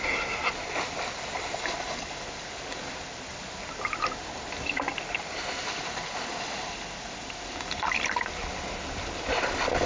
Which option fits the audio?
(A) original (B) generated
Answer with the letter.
A